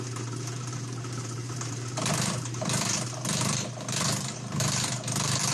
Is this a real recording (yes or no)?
no